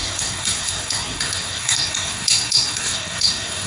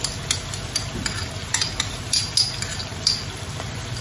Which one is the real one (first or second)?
second